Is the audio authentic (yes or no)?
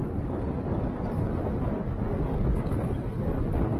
yes